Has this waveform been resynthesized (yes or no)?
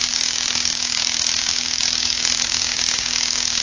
yes